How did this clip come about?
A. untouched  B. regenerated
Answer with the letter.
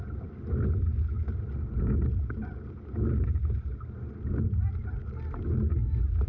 A